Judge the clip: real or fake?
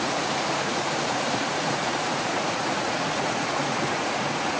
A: fake